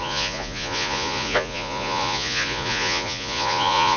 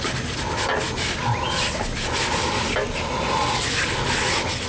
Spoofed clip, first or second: first